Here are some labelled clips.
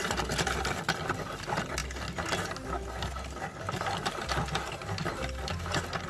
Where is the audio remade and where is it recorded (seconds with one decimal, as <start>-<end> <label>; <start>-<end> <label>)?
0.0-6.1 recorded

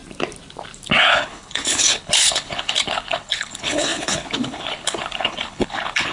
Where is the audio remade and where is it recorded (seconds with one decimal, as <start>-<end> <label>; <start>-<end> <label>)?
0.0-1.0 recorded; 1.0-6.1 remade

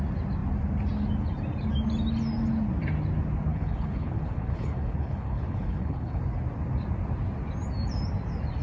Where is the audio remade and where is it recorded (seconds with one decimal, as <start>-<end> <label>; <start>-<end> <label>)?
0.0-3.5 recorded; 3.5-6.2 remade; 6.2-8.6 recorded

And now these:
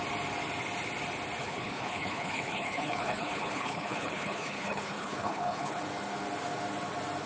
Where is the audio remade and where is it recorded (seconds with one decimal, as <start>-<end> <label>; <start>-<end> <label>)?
0.0-1.4 recorded; 1.4-5.8 remade; 5.8-7.3 recorded